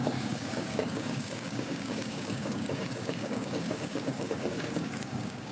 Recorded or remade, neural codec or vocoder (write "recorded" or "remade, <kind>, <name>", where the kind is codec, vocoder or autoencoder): remade, codec, DAC